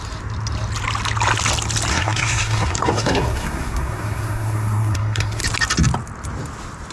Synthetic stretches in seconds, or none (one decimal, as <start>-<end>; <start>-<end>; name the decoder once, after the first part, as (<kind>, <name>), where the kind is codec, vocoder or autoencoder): 1.9-5.4 (codec, SNAC)